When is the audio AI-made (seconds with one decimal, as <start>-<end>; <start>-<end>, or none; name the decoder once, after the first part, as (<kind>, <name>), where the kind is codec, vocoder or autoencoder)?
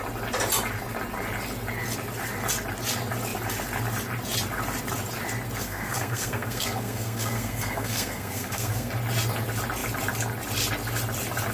5.6-8.9 (codec, SNAC)